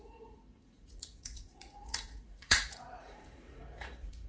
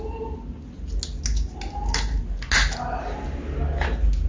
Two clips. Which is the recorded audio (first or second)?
second